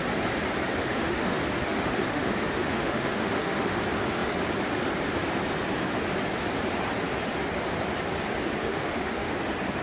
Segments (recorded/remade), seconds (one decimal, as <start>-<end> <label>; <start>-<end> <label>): 0.0-0.8 recorded; 0.8-3.8 remade; 3.8-8.7 recorded; 8.7-9.3 remade; 9.3-9.8 recorded